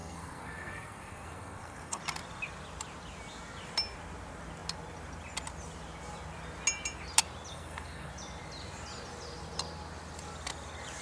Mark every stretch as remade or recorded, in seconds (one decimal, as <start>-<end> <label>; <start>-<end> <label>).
0.0-2.0 remade; 2.0-7.5 recorded; 7.5-8.1 remade; 8.1-11.0 recorded